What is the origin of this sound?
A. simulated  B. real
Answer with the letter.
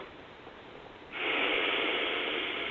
A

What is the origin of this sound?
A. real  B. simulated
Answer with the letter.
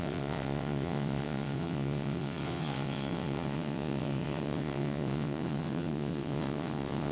B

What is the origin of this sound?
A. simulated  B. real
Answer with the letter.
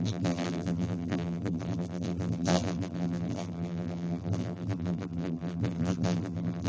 A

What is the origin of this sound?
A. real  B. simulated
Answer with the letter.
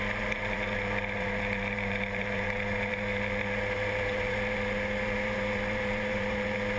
B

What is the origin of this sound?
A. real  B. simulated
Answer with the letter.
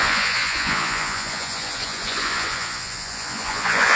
B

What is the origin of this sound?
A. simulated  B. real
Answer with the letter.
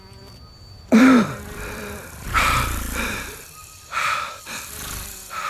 A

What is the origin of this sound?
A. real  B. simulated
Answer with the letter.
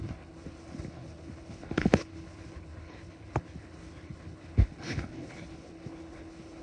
B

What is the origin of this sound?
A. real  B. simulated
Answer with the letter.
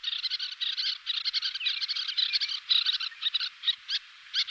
A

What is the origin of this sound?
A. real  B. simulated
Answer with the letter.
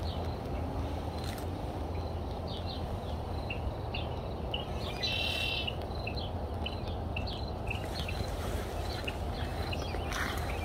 A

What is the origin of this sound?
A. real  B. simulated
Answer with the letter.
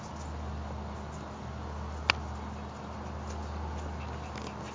A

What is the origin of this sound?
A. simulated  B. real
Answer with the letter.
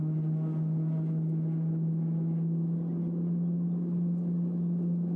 B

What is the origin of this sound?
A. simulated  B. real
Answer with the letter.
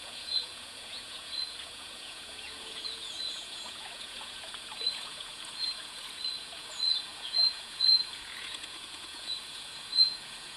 A